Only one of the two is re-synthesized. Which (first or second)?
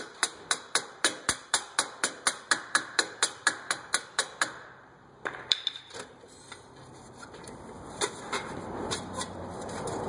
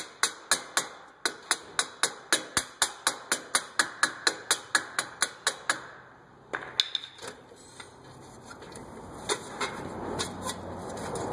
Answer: first